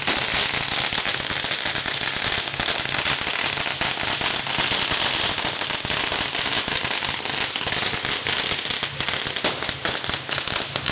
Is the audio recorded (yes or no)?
yes